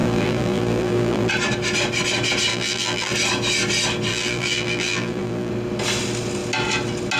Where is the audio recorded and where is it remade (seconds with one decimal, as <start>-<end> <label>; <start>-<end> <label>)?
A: 0.0-1.3 remade; 1.3-2.5 recorded; 2.5-3.1 remade; 3.1-4.1 recorded; 4.1-5.5 remade; 5.5-7.2 recorded